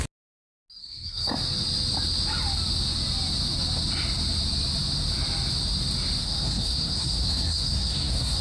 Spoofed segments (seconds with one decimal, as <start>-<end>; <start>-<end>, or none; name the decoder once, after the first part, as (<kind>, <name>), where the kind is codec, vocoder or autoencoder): 0.8-1.3 (codec, SNAC); 6.2-8.4